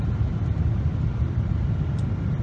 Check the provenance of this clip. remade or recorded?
recorded